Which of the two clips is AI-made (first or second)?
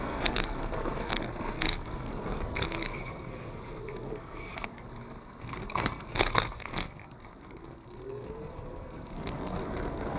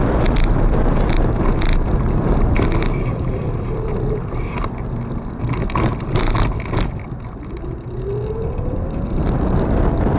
first